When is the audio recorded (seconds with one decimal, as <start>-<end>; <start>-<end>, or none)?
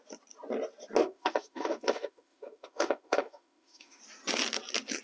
0.0-1.0; 4.0-5.0